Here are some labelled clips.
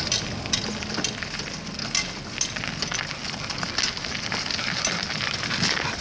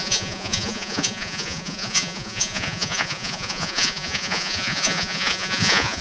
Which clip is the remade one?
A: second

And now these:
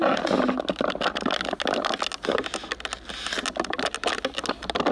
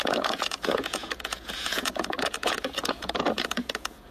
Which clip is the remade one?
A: second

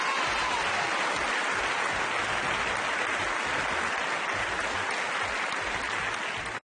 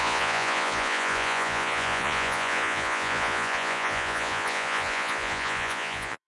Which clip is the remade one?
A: second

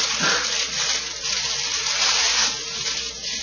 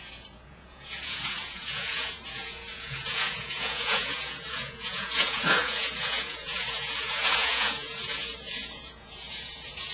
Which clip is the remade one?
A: second